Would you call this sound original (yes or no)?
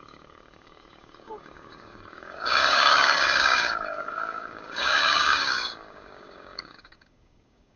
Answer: no